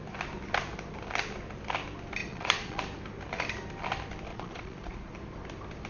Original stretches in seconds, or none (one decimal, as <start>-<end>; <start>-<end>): 0.0-2.2; 2.8-4.3; 5.1-5.9

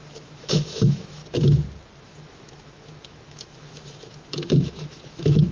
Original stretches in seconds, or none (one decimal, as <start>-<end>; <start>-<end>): 1.2-2.0